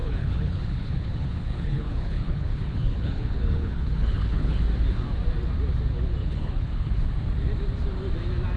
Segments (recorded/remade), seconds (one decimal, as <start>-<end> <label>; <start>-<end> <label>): 0.0-4.6 remade; 4.6-6.2 recorded; 6.2-7.1 remade; 7.1-8.6 recorded